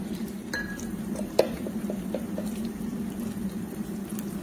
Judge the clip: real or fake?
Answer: fake